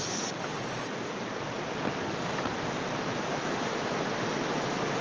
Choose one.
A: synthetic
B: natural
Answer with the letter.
B